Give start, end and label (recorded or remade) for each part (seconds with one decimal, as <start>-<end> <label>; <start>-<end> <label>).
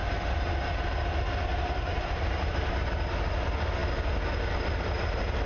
0.0-0.5 remade; 0.5-1.5 recorded; 1.5-2.7 remade; 2.7-5.5 recorded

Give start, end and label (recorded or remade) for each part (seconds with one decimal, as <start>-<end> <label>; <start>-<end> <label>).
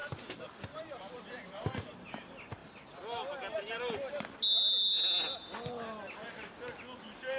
0.0-0.7 recorded; 0.7-2.6 remade; 2.6-7.0 recorded; 7.0-7.4 remade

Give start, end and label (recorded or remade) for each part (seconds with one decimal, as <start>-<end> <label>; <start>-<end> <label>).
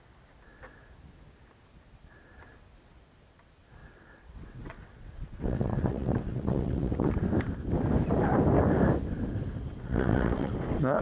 0.0-3.8 recorded; 3.8-7.1 remade; 7.1-9.7 recorded; 9.7-10.5 remade; 10.5-11.0 recorded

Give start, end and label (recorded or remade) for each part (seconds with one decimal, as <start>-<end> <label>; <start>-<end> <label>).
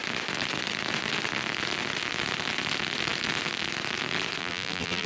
0.0-4.4 recorded; 4.4-5.1 remade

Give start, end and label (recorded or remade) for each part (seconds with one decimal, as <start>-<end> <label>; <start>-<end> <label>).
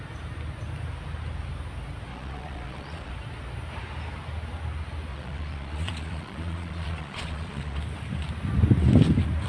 0.0-2.1 recorded; 2.1-3.1 remade; 3.1-5.1 recorded; 5.1-7.8 remade; 7.8-9.5 recorded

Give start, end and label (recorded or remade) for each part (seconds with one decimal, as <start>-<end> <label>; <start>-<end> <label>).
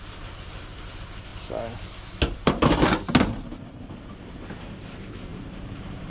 0.0-1.3 remade; 1.3-4.8 recorded; 4.8-6.1 remade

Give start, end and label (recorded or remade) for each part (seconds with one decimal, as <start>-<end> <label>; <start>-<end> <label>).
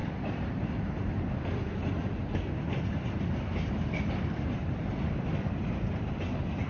0.0-0.8 remade; 0.8-4.6 recorded; 4.6-6.1 remade; 6.1-6.7 recorded